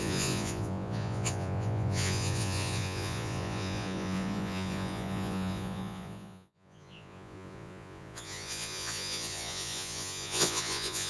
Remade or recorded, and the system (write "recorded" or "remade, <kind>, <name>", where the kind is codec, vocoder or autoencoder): remade, vocoder, Vocos